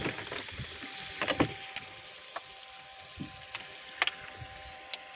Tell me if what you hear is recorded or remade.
recorded